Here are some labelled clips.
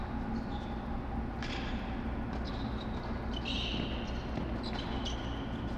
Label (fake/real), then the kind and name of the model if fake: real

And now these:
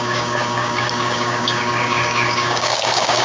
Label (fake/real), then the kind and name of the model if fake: fake, codec, DAC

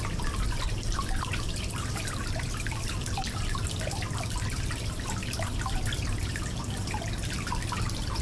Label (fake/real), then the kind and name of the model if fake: fake, vocoder, BigVGAN v2